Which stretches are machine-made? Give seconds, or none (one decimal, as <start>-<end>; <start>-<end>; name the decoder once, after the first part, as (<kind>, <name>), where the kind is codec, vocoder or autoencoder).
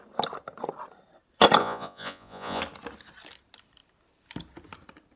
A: 1.6-2.6 (vocoder, Vocos)